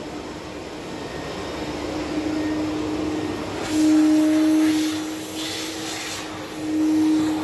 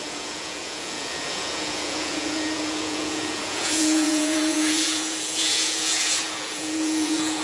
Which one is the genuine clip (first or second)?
first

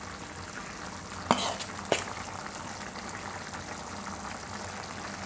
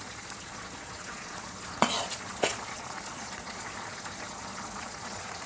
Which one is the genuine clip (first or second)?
first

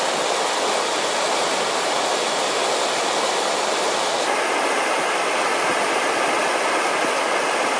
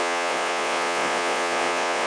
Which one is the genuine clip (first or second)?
first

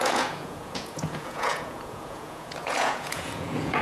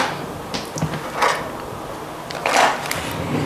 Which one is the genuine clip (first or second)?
second